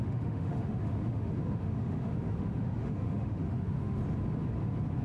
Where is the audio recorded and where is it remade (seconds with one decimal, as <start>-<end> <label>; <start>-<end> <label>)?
0.0-4.0 remade; 4.0-5.0 recorded